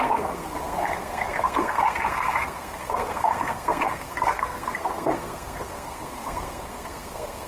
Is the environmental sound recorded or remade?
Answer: remade